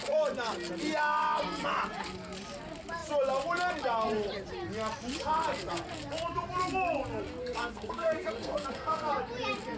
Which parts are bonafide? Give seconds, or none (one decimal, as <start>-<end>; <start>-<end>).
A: 0.0-7.4; 9.1-9.8